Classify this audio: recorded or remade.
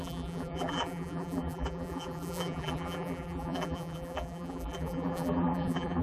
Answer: remade